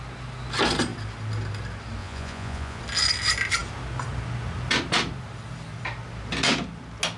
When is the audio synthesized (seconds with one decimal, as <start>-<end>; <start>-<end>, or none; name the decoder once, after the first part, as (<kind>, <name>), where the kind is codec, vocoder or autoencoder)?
2.0-2.8 (vocoder, Vocos)